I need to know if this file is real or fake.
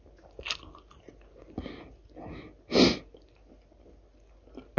real